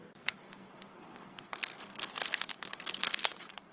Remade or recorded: remade